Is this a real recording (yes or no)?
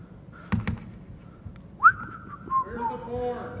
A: yes